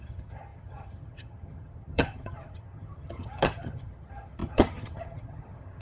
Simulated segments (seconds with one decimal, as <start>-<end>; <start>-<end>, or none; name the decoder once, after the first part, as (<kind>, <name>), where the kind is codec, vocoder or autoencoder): 0.0-5.8 (vocoder, HiFi-GAN)